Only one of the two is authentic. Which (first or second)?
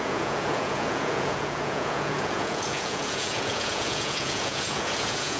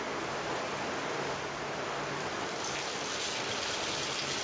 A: second